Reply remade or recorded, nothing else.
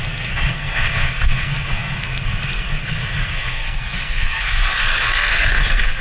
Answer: remade